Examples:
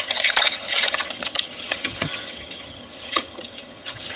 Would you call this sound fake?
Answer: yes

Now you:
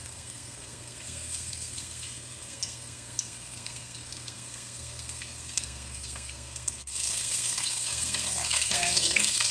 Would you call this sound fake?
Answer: yes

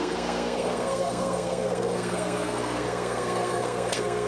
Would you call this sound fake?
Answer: yes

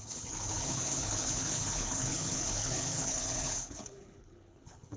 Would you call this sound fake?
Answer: yes